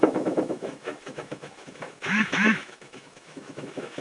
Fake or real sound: fake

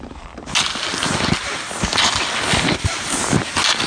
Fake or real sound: real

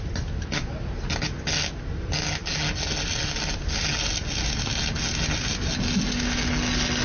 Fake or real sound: real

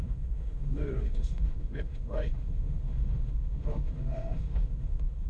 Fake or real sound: fake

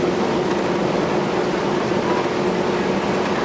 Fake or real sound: real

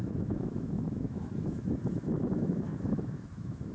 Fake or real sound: fake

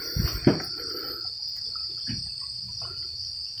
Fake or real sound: real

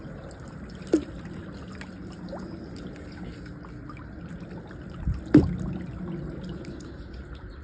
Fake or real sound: real